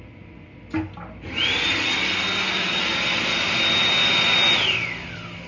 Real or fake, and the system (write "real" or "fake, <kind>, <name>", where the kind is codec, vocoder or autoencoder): real